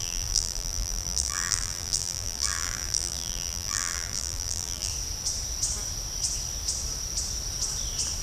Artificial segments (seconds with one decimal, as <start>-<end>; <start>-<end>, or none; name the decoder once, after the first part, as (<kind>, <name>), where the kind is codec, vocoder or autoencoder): 0.0-4.9 (vocoder, BigVGAN v2)